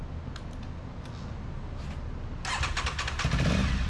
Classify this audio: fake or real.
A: real